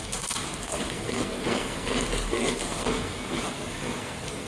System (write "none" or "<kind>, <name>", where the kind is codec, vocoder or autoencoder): codec, SNAC